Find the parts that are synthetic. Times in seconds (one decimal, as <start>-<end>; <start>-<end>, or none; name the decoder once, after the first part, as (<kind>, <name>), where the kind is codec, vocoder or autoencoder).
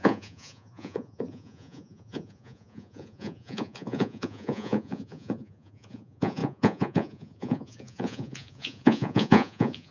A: 0.0-9.9 (vocoder, Vocos)